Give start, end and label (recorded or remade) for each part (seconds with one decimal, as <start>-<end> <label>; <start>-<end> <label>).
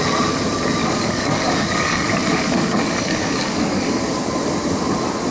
0.0-0.8 recorded; 0.8-4.0 remade; 4.0-5.3 recorded